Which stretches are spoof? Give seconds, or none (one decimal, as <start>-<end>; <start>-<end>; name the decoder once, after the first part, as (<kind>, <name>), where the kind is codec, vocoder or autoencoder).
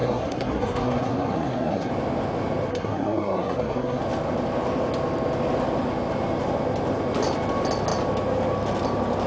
0.0-1.9 (codec, SNAC); 2.7-4.0